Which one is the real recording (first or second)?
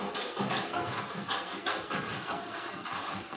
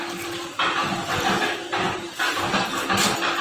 second